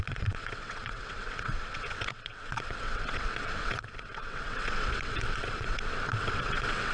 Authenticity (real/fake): fake